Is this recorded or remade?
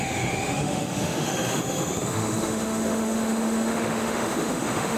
remade